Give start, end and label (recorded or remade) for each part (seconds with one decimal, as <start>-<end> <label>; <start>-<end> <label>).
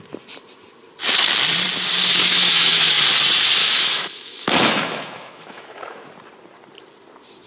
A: 0.0-2.2 recorded; 2.2-2.9 remade; 2.9-3.6 recorded; 3.6-6.1 remade; 6.1-7.5 recorded